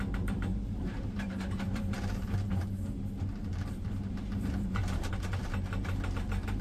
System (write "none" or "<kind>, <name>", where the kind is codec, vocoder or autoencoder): vocoder, BigVGAN v2